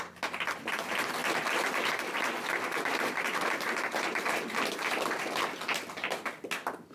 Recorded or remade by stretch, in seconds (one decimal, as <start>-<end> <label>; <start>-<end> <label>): 0.0-6.9 recorded

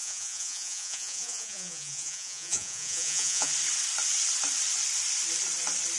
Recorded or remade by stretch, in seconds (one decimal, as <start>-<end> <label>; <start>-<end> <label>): 0.0-3.5 remade; 3.5-6.0 recorded

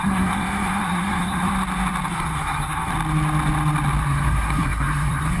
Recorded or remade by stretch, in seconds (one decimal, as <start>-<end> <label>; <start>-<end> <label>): 0.0-1.5 remade; 1.5-2.1 recorded; 2.1-2.9 remade; 2.9-4.0 recorded; 4.0-5.4 remade

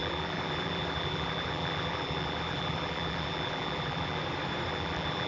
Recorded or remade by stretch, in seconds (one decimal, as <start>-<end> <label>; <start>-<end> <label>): 0.0-4.2 remade; 4.2-4.7 recorded; 4.7-5.3 remade

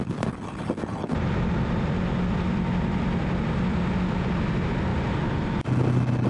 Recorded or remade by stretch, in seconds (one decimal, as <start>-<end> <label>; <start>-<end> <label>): 0.0-6.3 recorded

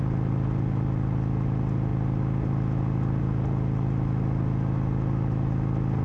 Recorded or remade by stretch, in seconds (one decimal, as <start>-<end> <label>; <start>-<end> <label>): 0.0-6.0 recorded

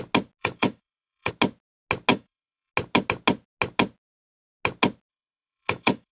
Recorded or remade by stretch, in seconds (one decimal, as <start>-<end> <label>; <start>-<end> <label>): 0.0-0.4 recorded; 0.4-1.3 remade; 1.3-2.1 recorded; 2.1-2.7 remade; 2.7-5.1 recorded; 5.1-6.1 remade

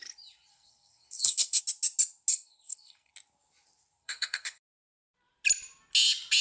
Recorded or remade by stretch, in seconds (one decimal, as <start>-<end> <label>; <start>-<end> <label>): 0.0-0.5 recorded; 0.5-1.6 remade; 1.6-2.3 recorded; 2.3-3.1 remade; 3.1-4.0 recorded; 4.0-4.6 remade; 4.6-6.4 recorded